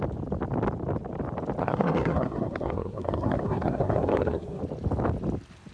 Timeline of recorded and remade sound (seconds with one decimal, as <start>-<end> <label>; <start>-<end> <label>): 0.0-1.6 recorded; 1.6-4.6 remade; 4.6-5.7 recorded